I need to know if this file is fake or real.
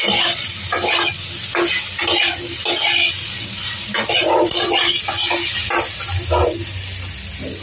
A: real